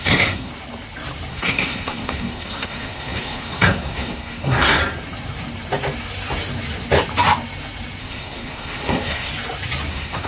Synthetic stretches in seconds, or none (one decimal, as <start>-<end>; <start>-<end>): 0.0-0.5; 1.3-4.8; 8.0-9.3; 9.9-10.3